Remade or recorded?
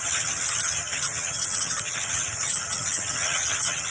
remade